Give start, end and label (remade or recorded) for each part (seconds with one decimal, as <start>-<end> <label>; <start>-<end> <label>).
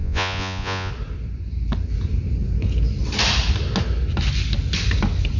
0.0-0.9 remade; 0.9-5.4 recorded